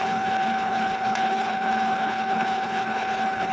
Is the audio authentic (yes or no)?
no